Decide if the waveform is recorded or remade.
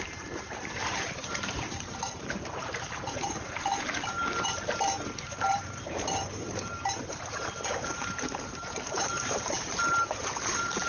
remade